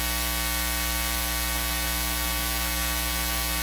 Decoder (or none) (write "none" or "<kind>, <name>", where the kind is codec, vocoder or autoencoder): none